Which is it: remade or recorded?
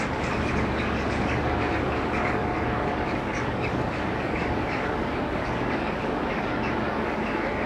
remade